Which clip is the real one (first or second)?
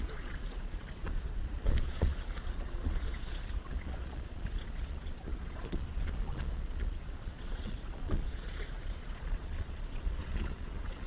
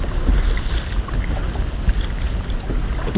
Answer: second